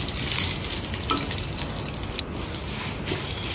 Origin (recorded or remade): recorded